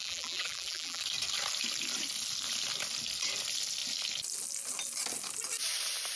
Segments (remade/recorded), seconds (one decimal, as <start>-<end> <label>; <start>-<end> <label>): 0.0-1.0 remade; 1.0-6.2 recorded